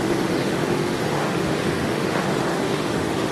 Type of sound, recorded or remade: remade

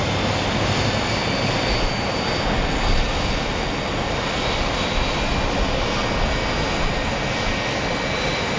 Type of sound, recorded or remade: recorded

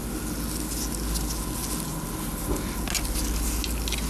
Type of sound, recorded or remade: recorded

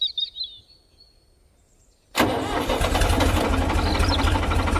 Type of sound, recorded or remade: recorded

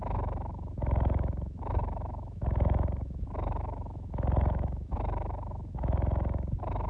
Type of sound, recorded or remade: remade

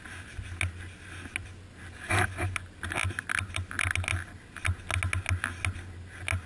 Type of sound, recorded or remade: recorded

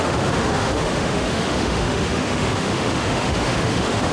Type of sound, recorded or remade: remade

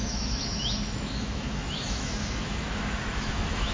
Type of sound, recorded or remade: remade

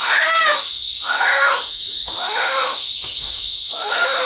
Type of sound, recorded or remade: remade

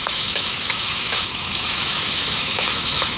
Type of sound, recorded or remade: remade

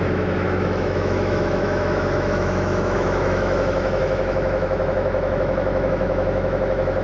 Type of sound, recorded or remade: remade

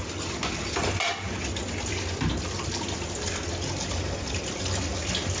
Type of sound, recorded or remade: recorded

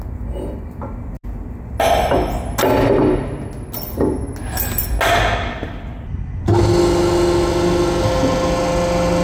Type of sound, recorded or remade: recorded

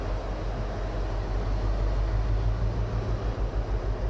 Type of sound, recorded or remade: recorded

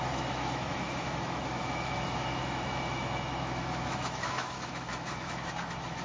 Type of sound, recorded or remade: remade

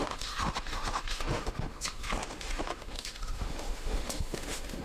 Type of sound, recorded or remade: remade